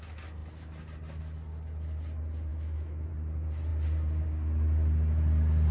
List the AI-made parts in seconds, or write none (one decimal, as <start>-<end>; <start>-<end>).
2.5-3.1